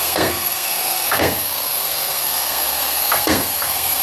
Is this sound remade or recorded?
remade